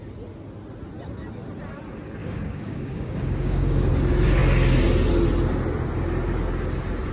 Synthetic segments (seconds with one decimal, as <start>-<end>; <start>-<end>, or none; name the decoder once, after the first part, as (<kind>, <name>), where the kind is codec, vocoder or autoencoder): 2.2-3.9 (codec, DAC)